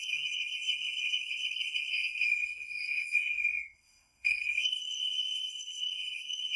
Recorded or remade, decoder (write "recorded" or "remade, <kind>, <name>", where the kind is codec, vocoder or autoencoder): remade, codec, SNAC